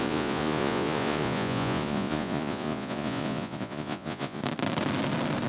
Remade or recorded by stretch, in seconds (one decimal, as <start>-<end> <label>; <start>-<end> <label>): 0.0-4.4 remade; 4.4-5.5 recorded